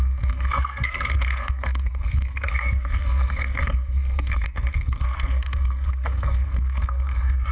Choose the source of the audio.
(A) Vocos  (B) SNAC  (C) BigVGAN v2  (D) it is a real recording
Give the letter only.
B